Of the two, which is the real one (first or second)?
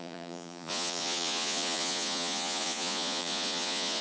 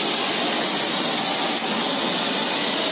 second